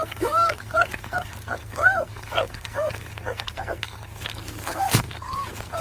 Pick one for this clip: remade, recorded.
remade